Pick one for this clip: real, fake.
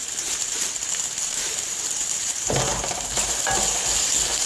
fake